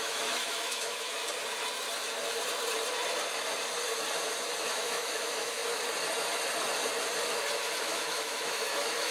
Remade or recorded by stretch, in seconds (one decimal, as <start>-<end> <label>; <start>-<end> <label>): 0.0-1.2 remade; 1.2-4.6 recorded; 4.6-5.6 remade; 5.6-7.8 recorded; 7.8-9.1 remade